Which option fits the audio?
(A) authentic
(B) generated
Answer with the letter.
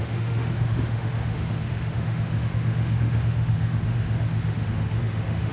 B